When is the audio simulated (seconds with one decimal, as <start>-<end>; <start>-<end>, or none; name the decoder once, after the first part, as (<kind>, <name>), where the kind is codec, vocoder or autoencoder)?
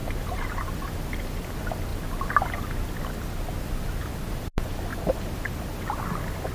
4.9-5.7 (vocoder, BigVGAN v2)